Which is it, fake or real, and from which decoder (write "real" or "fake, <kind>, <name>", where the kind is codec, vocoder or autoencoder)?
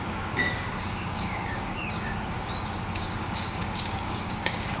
fake, codec, DAC